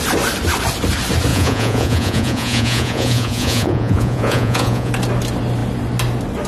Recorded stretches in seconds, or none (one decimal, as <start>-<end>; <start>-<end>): 0.0-1.3; 4.9-6.5